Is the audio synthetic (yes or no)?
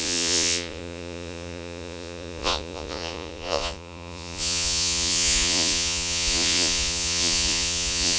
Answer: yes